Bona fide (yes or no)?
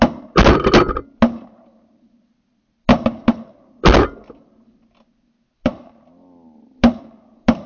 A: yes